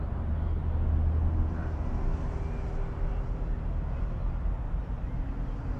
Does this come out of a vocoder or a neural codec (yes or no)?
no